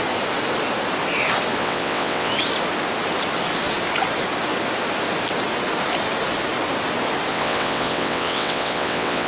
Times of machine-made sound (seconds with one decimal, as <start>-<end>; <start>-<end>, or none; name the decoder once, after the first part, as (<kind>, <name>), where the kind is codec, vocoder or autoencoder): 1.6-2.3 (vocoder, WaveNeXt); 7.3-9.3